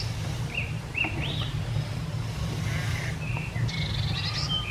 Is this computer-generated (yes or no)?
yes